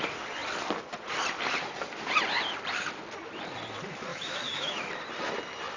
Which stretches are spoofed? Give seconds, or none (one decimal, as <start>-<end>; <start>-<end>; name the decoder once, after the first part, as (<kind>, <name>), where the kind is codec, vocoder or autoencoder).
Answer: 4.1-4.9 (autoencoder, DAC-VAE)